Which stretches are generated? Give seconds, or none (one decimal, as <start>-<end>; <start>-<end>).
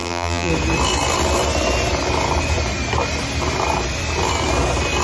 0.0-0.5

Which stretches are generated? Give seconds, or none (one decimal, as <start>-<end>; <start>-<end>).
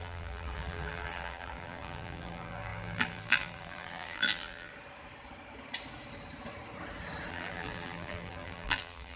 0.0-4.7; 7.3-9.2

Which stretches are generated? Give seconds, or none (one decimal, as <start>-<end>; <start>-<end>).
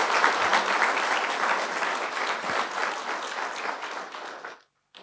none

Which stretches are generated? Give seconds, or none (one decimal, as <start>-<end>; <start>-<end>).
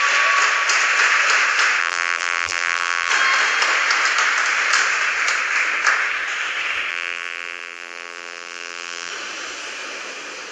1.8-3.1; 6.9-9.1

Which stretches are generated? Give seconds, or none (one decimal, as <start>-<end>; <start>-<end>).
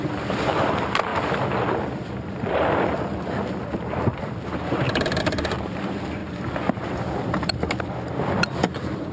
0.0-1.1; 1.8-9.1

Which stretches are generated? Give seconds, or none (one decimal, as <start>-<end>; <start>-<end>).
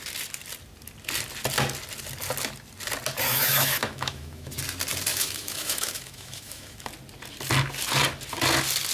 3.3-4.5; 5.1-6.9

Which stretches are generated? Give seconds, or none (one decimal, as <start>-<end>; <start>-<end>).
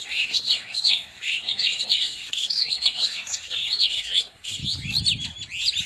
0.0-4.6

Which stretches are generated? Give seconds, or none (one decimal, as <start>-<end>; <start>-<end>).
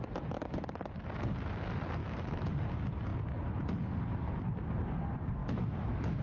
2.0-2.5; 5.4-6.2